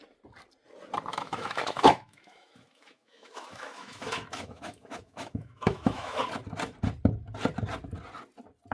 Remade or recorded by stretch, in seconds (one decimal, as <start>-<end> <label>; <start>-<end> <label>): 0.0-1.1 recorded; 1.1-6.2 remade; 6.2-8.7 recorded